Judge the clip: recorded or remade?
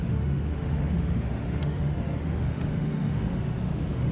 remade